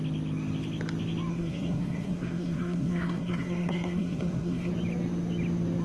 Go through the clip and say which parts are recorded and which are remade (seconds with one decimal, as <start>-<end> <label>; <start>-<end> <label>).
0.0-1.3 recorded; 1.3-4.7 remade; 4.7-5.8 recorded